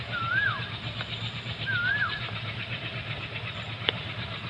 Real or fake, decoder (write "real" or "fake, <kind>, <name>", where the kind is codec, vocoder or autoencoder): fake, vocoder, BigVGAN v2